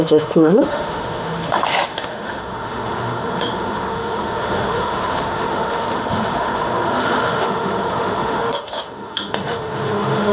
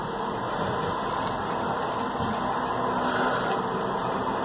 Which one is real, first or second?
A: second